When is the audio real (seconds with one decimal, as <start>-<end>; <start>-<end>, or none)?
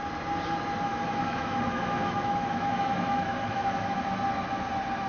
0.0-0.9; 4.0-5.1